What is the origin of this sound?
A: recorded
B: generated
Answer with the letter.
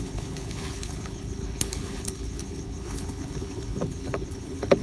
B